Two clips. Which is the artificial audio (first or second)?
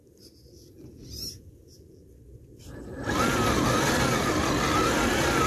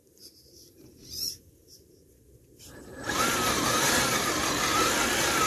second